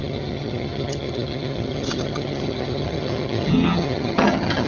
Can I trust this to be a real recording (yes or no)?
no